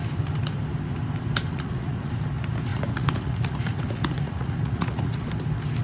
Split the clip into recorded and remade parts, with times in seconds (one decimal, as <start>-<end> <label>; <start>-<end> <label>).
0.0-1.5 recorded; 1.5-2.1 remade; 2.1-2.7 recorded; 2.7-5.3 remade; 5.3-5.8 recorded